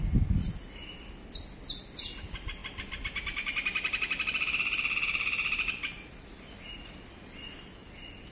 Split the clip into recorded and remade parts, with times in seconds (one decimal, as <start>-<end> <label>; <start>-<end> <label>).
0.0-8.3 recorded